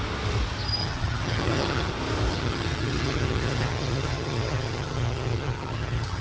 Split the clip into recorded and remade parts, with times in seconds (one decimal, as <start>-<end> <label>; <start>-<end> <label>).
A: 0.0-0.8 recorded; 0.8-1.9 remade; 1.9-2.3 recorded; 2.3-6.2 remade